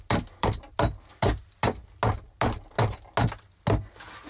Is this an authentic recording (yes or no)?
yes